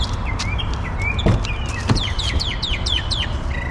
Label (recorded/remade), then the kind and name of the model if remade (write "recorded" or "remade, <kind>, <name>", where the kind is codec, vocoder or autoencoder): recorded